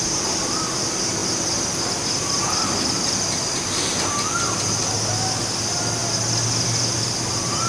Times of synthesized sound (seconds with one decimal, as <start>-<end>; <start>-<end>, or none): none

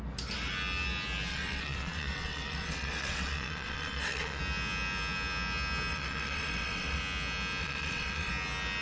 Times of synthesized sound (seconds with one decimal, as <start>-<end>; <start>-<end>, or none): 1.3-4.4; 5.9-7.0; 7.6-8.3

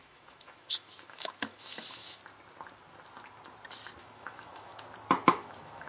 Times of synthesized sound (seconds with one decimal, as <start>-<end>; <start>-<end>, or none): 0.0-2.2; 4.0-4.7; 5.3-5.9